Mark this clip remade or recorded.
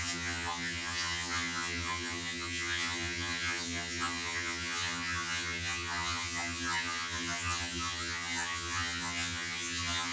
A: remade